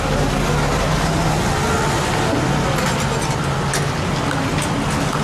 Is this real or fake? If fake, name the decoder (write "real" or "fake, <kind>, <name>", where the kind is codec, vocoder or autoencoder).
real